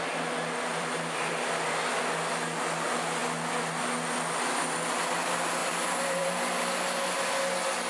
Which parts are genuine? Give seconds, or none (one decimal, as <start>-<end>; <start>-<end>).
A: 0.0-0.7; 1.3-5.6; 6.3-7.9